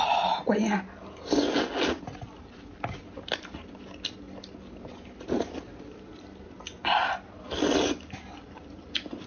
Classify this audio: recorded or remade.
recorded